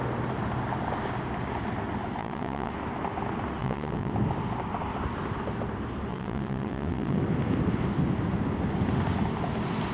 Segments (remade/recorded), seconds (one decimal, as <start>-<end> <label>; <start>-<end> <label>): 0.0-2.2 recorded; 2.2-2.7 remade; 2.7-3.6 recorded; 3.6-4.1 remade; 4.1-6.1 recorded; 6.1-7.2 remade; 7.2-9.9 recorded